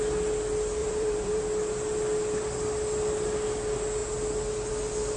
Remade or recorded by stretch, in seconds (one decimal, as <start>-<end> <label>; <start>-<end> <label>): 0.0-0.8 recorded; 0.8-1.4 remade; 1.4-5.2 recorded